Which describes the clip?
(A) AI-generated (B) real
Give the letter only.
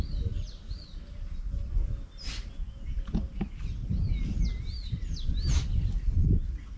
B